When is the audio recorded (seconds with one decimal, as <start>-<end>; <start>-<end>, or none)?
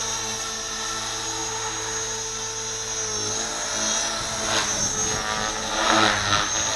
0.0-6.8